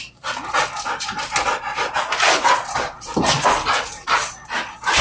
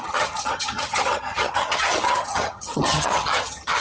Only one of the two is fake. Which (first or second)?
second